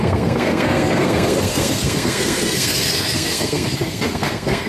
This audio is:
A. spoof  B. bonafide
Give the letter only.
A